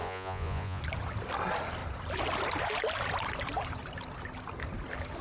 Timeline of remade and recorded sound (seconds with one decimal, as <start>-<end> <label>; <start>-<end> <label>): 0.0-0.8 remade; 0.8-5.2 recorded